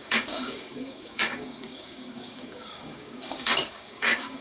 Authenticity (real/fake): fake